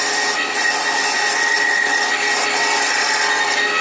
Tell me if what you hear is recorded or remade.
recorded